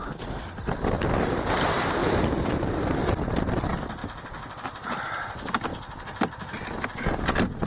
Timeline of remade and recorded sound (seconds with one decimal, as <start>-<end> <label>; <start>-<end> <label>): 0.0-2.0 recorded; 2.0-2.7 remade; 2.7-4.0 recorded; 4.0-5.0 remade; 5.0-7.7 recorded

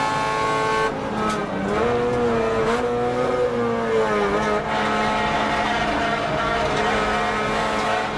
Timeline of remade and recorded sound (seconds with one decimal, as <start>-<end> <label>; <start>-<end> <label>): 0.0-8.2 recorded

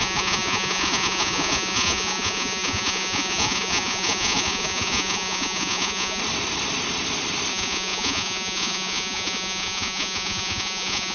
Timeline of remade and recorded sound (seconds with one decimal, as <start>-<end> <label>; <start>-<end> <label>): 0.0-6.2 remade; 6.2-7.5 recorded; 7.5-11.1 remade

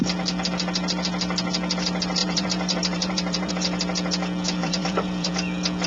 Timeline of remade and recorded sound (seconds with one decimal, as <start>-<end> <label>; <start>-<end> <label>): 0.0-2.2 recorded; 2.2-3.5 remade; 3.5-4.6 recorded; 4.6-5.3 remade; 5.3-5.9 recorded

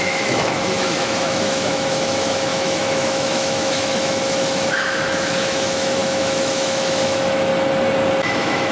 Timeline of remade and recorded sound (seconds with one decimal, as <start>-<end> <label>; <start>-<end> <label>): 0.0-7.5 remade; 7.5-8.2 recorded; 8.2-8.7 remade

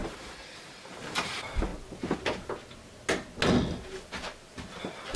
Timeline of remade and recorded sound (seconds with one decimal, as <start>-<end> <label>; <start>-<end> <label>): 0.0-1.7 remade; 1.7-4.8 recorded; 4.8-5.2 remade

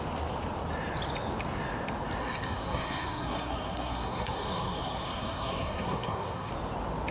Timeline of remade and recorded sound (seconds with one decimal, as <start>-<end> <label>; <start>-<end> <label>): 0.0-2.2 recorded; 2.2-6.5 remade; 6.5-7.1 recorded